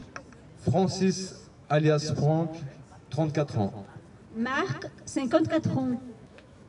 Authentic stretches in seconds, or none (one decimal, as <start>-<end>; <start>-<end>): 0.0-1.1; 2.0-6.0